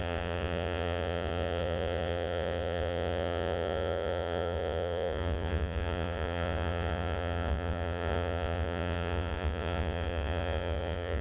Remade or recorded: remade